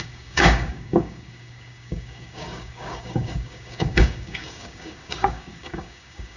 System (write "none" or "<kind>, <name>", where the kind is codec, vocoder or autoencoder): codec, DAC